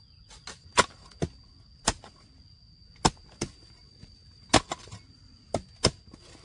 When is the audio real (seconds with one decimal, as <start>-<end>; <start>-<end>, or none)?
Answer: 0.0-6.4